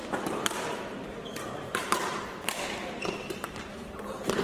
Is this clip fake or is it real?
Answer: real